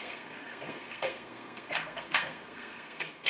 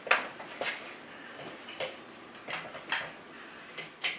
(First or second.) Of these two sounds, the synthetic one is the first